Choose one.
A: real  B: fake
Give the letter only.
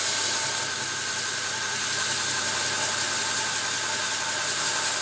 A